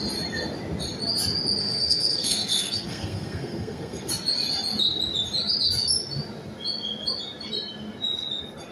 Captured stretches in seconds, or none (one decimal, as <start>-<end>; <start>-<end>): 0.0-1.6; 4.1-8.7